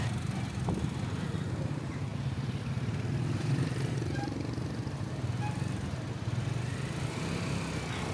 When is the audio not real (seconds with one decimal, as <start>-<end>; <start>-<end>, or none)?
none